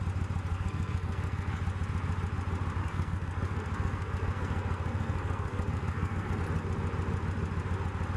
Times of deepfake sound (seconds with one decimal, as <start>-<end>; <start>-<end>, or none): 0.5-1.6; 2.8-6.4

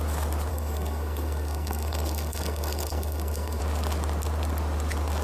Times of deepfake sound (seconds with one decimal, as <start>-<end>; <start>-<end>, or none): 0.5-3.6